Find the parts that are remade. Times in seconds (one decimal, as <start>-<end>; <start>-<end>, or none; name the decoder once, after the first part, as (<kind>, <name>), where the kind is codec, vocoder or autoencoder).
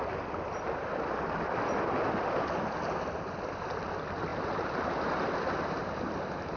none